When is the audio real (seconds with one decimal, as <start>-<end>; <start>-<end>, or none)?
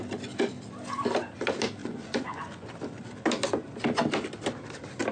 0.0-1.8; 2.7-5.1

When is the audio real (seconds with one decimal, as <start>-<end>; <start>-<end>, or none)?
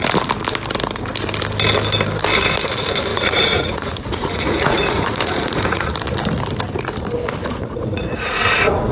0.0-3.1; 5.9-7.4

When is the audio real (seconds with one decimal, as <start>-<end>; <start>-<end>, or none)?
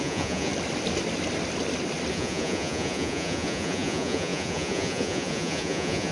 0.5-2.1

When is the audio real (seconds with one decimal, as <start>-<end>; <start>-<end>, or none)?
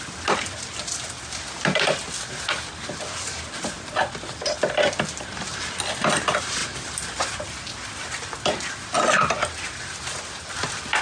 0.0-11.0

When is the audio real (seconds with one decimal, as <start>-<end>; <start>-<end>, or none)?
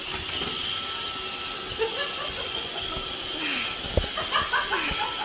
0.0-1.9; 2.8-5.2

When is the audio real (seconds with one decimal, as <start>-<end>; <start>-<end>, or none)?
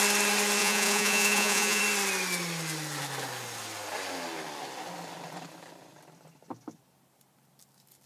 0.0-0.6; 1.8-8.1